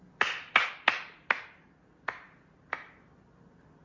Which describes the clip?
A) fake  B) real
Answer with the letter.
B